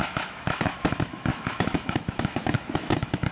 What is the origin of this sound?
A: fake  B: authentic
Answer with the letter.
A